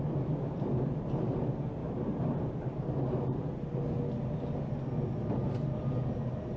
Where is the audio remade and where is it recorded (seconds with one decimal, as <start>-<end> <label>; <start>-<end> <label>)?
0.0-6.6 recorded